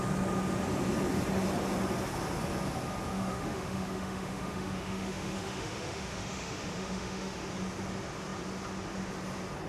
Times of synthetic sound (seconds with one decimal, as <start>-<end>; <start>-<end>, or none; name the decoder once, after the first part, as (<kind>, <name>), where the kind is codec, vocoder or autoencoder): 3.1-7.5 (autoencoder, DAC-VAE)